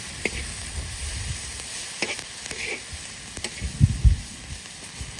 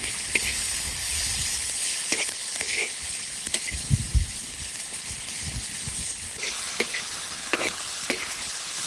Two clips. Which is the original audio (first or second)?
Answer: first